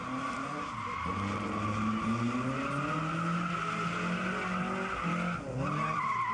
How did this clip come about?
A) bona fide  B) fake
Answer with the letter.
A